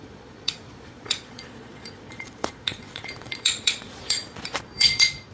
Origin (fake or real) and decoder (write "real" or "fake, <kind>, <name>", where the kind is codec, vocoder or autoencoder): fake, vocoder, Vocos